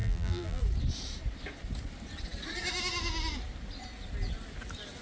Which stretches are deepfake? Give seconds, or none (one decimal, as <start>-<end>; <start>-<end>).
0.0-0.6